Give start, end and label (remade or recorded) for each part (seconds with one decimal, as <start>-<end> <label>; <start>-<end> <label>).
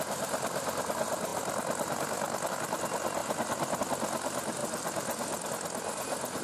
0.0-3.2 recorded; 3.2-3.8 remade; 3.8-4.6 recorded; 4.6-5.5 remade; 5.5-6.4 recorded